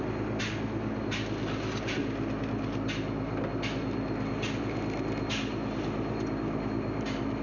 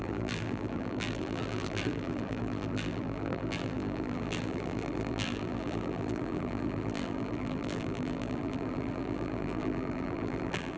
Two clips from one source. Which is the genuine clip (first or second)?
first